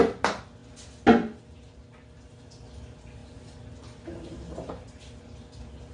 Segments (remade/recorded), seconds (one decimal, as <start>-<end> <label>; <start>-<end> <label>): 0.0-5.9 recorded